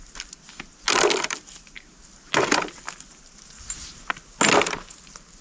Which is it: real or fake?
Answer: real